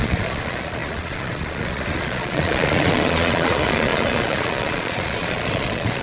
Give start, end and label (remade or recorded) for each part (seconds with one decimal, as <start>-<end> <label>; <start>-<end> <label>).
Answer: 0.0-6.0 remade